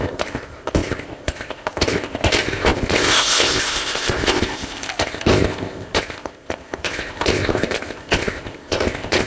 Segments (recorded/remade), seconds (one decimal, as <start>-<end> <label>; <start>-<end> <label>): 0.0-9.3 remade